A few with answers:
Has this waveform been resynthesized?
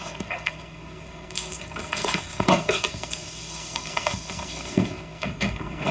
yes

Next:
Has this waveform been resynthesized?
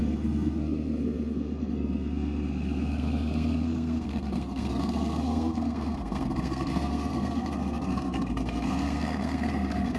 yes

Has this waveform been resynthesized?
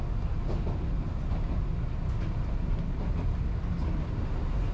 no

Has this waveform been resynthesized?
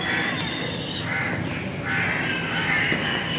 no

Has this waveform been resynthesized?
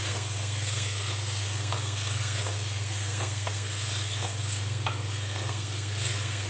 yes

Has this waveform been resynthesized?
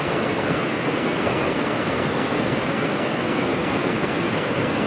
yes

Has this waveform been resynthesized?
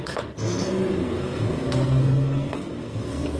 yes